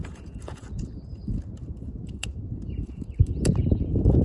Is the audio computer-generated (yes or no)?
yes